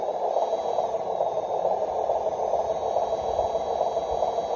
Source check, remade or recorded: recorded